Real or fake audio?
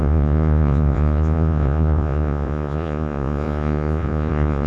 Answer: fake